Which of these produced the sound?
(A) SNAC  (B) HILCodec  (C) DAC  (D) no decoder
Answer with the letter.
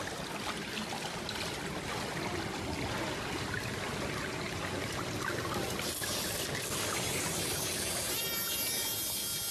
D